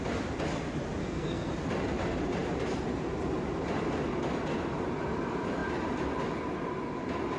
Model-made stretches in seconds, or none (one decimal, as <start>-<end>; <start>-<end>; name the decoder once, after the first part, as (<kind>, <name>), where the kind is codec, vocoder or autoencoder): 1.0-1.5 (codec, SNAC)

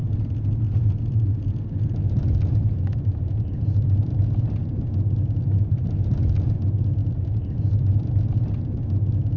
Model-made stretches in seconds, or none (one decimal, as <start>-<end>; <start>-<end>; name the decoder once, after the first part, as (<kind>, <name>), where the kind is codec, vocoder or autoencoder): none

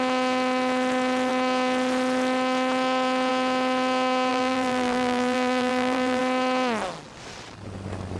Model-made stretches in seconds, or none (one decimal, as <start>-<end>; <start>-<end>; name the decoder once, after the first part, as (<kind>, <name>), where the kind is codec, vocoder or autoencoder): 4.3-6.2 (vocoder, BigVGAN v2)

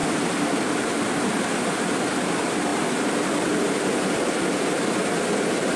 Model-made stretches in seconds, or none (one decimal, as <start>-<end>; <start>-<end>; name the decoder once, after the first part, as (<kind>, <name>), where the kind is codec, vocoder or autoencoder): 0.0-2.3 (vocoder, BigVGAN v2)

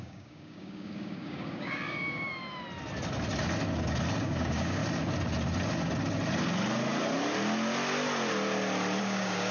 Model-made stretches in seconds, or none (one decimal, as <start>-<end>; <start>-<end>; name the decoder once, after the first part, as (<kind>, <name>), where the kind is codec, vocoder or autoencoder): 0.0-2.4 (codec, DAC); 4.2-4.8; 9.0-9.5

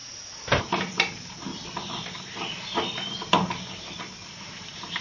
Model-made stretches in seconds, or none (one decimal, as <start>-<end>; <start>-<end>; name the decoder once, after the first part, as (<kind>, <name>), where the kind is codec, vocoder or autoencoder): none